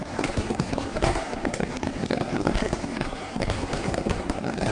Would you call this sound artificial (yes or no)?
yes